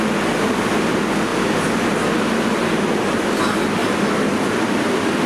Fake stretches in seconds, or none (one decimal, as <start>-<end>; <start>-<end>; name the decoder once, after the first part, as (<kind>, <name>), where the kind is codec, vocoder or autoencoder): none